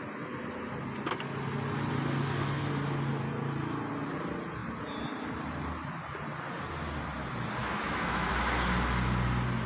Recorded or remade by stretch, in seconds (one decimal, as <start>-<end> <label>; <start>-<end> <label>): 0.0-7.6 recorded; 7.6-8.3 remade; 8.3-9.7 recorded